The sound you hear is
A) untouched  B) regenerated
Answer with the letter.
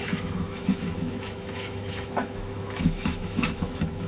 B